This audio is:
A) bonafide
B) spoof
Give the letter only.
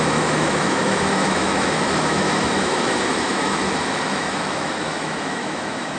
B